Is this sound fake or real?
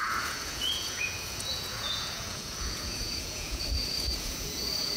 fake